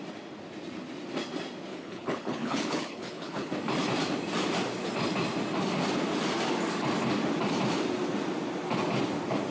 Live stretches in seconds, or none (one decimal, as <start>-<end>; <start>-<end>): 0.0-1.7; 3.5-9.5